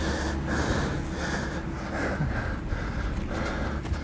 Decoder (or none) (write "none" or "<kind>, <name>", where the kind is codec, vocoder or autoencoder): none